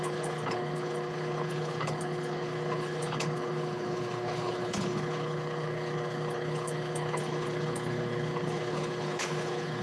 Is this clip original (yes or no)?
no